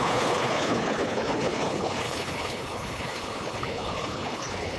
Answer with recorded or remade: remade